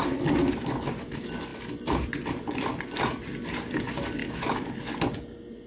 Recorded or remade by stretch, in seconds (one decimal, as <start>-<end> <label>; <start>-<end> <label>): 0.0-4.2 recorded; 4.2-4.7 remade; 4.7-5.7 recorded

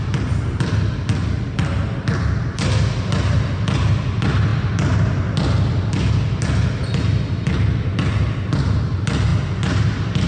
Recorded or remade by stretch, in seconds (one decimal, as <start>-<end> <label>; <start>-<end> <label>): 0.0-10.3 recorded